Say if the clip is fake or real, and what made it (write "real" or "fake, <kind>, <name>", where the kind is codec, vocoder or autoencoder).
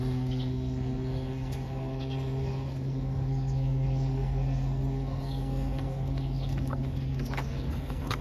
fake, codec, SNAC